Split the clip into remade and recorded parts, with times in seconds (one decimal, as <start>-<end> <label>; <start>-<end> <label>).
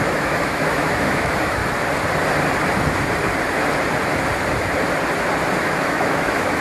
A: 0.0-1.6 remade; 1.6-5.6 recorded; 5.6-6.6 remade